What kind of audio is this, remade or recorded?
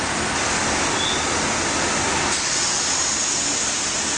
recorded